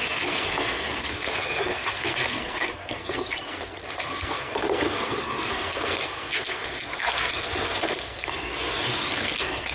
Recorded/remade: remade